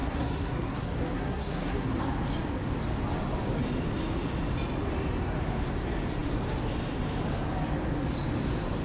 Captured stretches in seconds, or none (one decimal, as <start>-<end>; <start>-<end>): 2.0-8.8